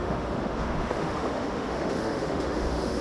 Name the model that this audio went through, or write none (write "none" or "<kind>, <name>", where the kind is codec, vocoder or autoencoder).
autoencoder, DAC-VAE